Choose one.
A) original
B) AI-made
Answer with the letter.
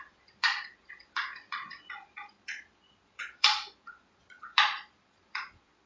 B